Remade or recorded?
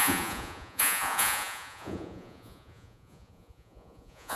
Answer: remade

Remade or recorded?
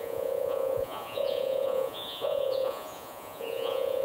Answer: remade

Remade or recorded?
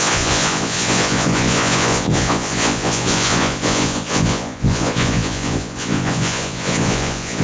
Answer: remade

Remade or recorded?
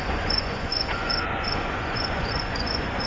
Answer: remade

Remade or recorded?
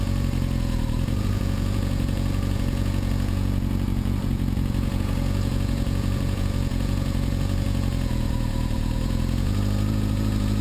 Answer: remade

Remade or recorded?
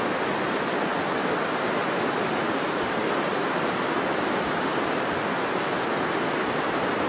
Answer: recorded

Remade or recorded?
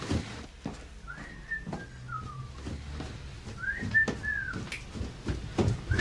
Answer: recorded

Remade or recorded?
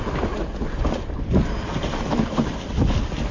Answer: recorded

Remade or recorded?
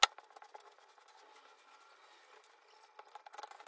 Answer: recorded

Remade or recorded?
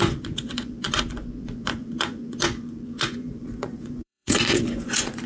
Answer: remade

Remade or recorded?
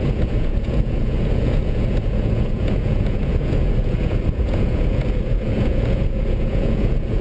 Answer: remade